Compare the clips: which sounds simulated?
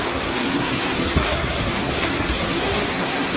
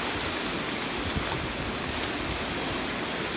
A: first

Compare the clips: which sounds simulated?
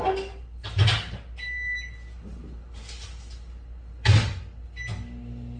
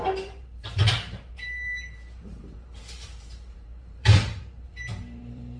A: second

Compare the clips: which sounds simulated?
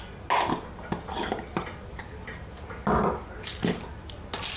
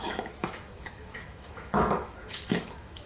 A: second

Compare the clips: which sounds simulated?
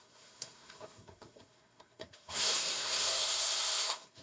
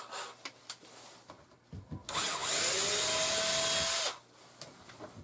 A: first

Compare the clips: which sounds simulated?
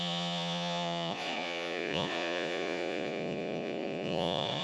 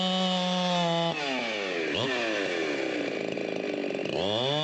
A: first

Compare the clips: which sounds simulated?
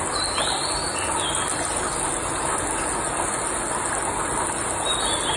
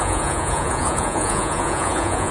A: second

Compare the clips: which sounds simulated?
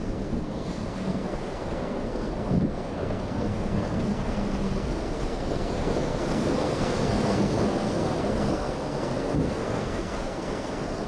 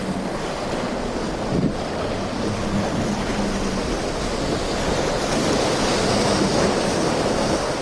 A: first